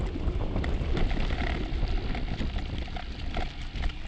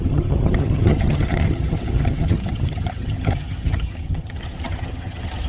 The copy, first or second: second